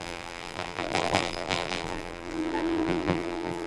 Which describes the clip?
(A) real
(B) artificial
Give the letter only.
B